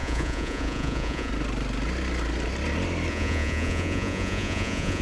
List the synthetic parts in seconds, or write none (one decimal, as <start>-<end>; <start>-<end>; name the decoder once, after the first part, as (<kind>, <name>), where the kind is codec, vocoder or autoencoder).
0.0-1.3 (vocoder, Vocos); 3.1-5.0